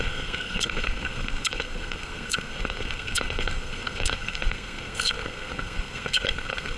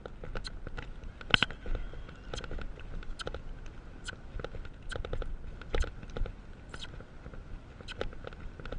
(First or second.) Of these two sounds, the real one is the second